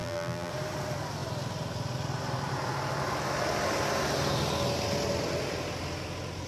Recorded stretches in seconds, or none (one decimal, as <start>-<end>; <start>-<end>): 0.5-6.5